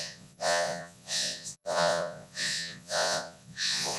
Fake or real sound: fake